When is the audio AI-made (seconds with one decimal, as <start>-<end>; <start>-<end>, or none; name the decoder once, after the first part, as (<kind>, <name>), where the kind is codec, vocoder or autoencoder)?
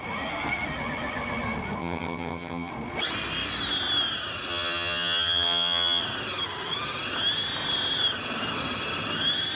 1.8-2.7 (vocoder, HiFi-GAN); 4.5-6.0